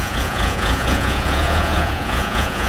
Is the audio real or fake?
fake